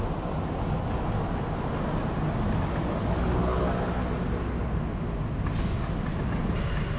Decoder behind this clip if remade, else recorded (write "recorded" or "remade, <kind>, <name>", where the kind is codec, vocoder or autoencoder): recorded